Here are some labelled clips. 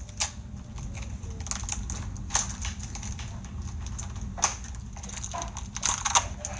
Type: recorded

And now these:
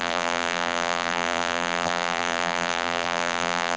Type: remade